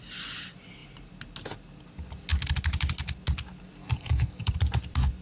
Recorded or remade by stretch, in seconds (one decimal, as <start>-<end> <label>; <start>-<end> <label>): 0.0-3.8 recorded; 3.8-4.5 remade; 4.5-5.2 recorded

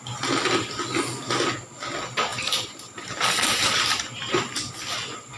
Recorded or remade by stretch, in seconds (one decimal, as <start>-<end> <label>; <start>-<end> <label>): 0.0-2.3 recorded; 2.3-4.7 remade; 4.7-5.4 recorded

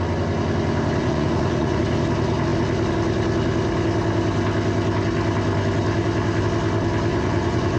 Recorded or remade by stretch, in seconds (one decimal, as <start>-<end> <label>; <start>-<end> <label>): 0.0-1.0 recorded; 1.0-1.8 remade; 1.8-7.1 recorded; 7.1-7.8 remade

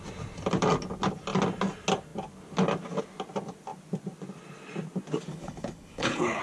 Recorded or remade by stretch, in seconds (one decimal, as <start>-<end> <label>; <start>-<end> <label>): 0.0-5.3 recorded; 5.3-6.4 remade

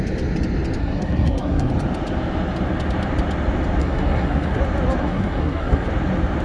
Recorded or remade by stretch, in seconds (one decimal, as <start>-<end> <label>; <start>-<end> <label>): 0.0-0.8 recorded; 0.8-1.7 remade; 1.7-3.8 recorded; 3.8-4.6 remade; 4.6-5.0 recorded; 5.0-5.9 remade; 5.9-6.4 recorded

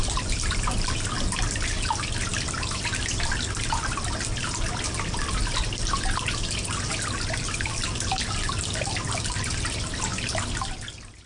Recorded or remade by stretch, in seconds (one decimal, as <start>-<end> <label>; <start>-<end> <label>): 0.0-11.3 recorded

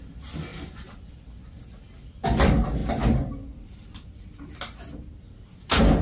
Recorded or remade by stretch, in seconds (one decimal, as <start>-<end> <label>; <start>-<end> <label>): 0.0-0.5 recorded; 0.5-1.4 remade; 1.4-2.8 recorded; 2.8-4.6 remade; 4.6-6.0 recorded

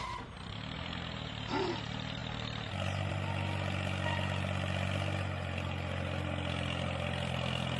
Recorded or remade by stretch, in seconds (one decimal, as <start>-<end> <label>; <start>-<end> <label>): 0.0-7.8 recorded